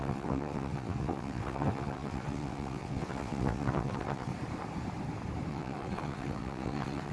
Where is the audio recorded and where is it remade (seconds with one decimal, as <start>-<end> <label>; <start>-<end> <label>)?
0.0-4.3 remade; 4.3-5.5 recorded; 5.5-7.1 remade